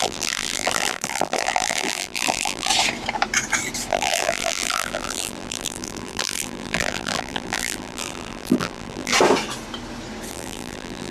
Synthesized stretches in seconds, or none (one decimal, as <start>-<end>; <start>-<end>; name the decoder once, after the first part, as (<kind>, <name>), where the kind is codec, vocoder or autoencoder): 0.0-2.7 (vocoder, BigVGAN v2); 3.9-9.1; 10.3-11.1